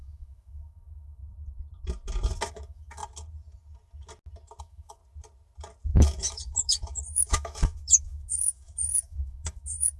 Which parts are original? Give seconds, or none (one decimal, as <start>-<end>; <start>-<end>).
1.2-2.5; 3.0-4.6; 5.0-5.9